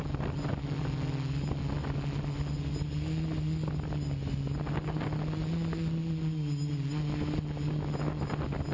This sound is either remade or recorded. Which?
recorded